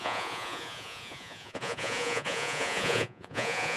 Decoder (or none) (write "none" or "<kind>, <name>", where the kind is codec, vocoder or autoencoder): vocoder, Vocos